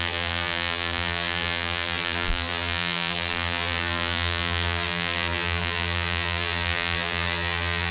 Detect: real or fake fake